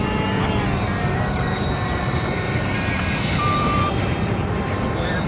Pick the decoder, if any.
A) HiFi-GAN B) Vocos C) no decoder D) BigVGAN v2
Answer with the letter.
D